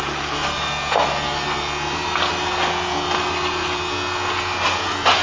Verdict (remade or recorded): recorded